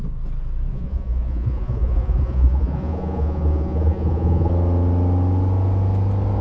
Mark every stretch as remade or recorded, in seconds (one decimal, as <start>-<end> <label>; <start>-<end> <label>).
0.0-0.7 recorded; 0.7-4.5 remade; 4.5-6.4 recorded